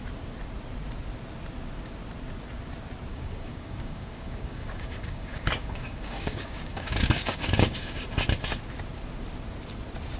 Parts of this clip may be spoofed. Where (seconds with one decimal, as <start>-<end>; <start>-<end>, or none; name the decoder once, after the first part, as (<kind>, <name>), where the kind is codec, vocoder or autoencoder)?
3.1-8.0 (codec, DAC)